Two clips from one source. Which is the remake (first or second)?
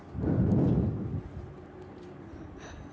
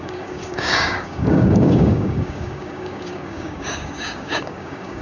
second